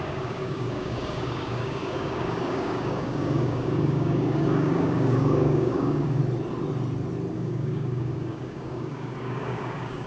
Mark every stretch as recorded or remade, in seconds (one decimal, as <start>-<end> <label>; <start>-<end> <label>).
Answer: 0.0-6.2 remade; 6.2-7.3 recorded; 7.3-10.1 remade